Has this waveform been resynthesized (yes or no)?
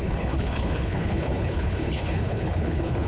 yes